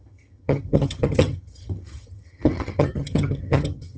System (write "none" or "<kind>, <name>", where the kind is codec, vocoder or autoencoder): vocoder, HiFi-GAN